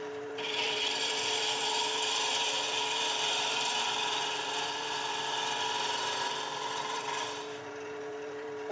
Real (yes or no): no